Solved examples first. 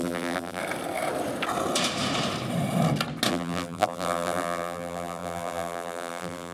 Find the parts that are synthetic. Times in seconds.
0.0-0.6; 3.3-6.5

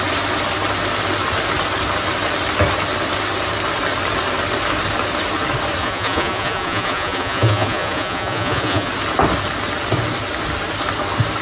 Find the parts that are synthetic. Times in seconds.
5.8-8.9

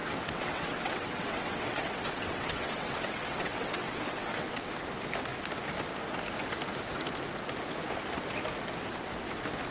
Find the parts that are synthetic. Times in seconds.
0.0-4.7

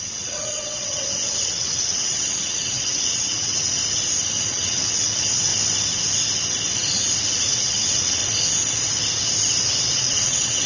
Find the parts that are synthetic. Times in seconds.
0.0-3.8; 4.4-5.5; 7.5-8.2; 10.0-10.7

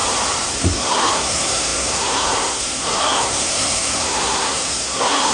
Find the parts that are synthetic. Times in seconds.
0.6-5.3

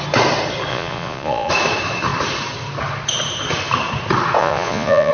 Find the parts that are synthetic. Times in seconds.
0.7-1.5; 4.4-5.1

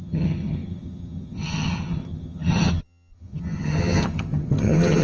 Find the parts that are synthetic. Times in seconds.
0.0-5.0

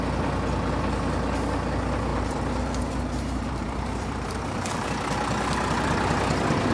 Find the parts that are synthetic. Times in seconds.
2.1-4.9